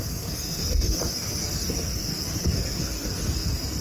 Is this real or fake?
fake